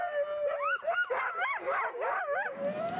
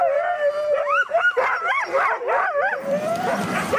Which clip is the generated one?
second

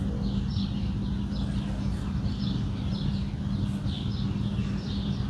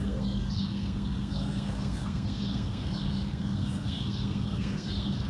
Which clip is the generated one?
second